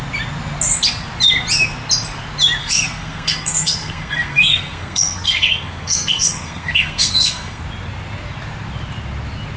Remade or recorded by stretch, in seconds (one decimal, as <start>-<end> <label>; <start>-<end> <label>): 0.0-2.6 recorded; 2.6-7.6 remade; 7.6-9.6 recorded

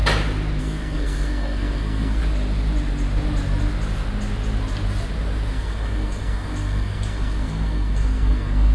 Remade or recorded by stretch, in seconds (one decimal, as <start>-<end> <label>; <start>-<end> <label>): 0.0-0.6 recorded; 0.6-2.2 remade; 2.2-5.5 recorded; 5.5-8.7 remade